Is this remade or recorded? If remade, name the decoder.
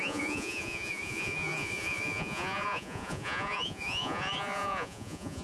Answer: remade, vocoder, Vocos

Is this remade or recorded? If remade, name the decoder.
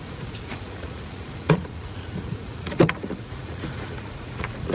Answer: remade, vocoder, Vocos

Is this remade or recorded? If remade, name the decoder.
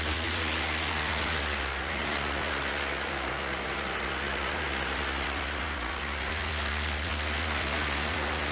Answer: remade, vocoder, Vocos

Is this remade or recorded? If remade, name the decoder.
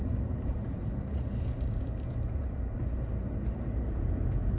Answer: recorded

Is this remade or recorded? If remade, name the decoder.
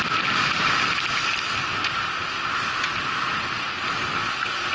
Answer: recorded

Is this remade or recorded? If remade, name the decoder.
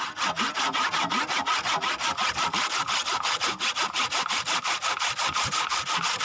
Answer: recorded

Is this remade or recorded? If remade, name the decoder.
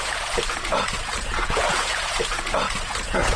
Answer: remade, vocoder, Vocos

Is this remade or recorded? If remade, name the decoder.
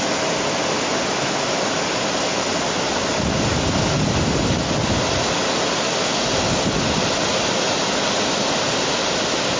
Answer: recorded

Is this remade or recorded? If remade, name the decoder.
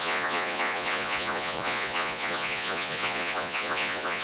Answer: remade, vocoder, Vocos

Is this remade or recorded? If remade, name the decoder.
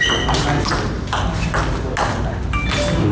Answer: recorded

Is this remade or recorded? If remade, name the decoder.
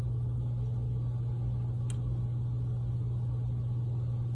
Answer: recorded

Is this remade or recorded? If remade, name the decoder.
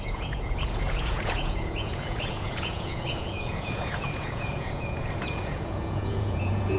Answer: remade, vocoder, Vocos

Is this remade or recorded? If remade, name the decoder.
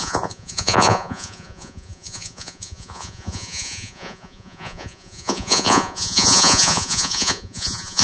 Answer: remade, vocoder, Vocos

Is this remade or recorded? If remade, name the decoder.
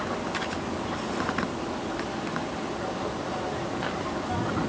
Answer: recorded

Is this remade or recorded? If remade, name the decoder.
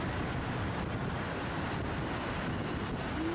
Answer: recorded